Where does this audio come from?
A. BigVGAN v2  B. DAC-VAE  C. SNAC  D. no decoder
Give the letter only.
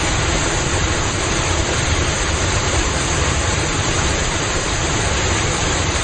A